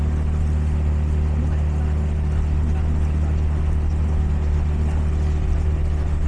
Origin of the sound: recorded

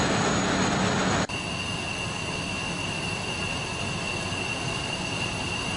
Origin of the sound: recorded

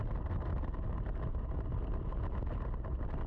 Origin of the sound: recorded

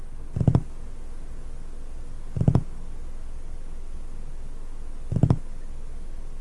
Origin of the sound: recorded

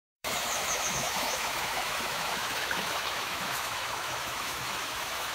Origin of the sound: remade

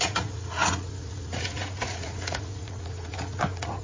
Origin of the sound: remade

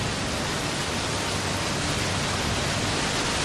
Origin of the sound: recorded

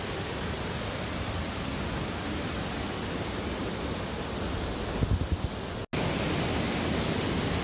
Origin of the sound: recorded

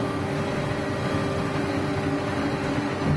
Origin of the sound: recorded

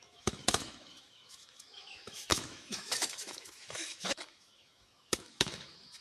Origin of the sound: remade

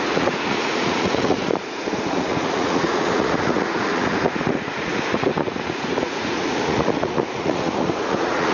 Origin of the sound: remade